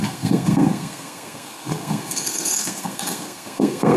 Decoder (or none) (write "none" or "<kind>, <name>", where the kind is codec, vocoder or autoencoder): codec, SNAC